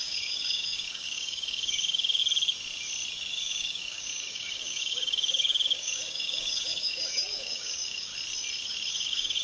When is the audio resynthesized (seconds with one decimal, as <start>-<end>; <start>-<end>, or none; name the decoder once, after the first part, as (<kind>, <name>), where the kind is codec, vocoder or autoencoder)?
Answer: 0.0-2.2 (codec, DAC); 3.3-8.1; 8.9-9.4